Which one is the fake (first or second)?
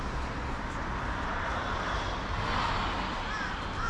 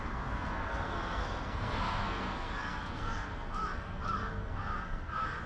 second